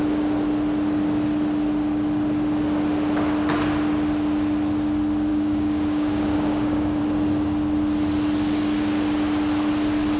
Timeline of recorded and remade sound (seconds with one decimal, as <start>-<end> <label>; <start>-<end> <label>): 0.0-5.3 recorded; 5.3-7.0 remade; 7.0-10.2 recorded

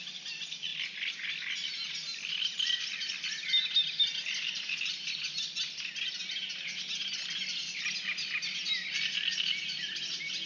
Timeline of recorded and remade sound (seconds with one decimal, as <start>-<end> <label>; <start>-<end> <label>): 0.0-10.5 recorded

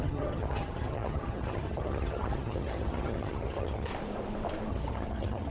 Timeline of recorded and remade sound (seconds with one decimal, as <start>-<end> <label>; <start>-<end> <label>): 0.0-3.9 remade; 3.9-4.7 recorded; 4.7-5.5 remade

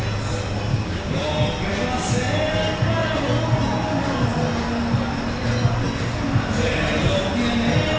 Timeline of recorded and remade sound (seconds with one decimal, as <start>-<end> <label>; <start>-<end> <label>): 0.0-0.7 recorded; 0.7-1.2 remade; 1.2-8.0 recorded

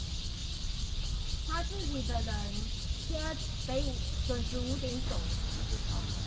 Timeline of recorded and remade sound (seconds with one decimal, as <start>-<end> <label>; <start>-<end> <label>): 0.0-6.3 recorded

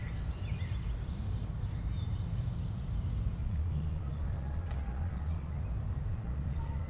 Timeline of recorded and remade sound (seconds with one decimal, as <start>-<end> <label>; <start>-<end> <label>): 0.0-3.4 recorded; 3.4-5.6 remade; 5.6-6.1 recorded; 6.1-6.9 remade

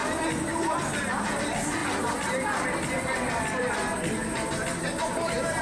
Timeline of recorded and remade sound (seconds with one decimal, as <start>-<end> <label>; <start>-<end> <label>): 0.0-1.8 recorded; 1.8-3.7 remade; 3.7-5.6 recorded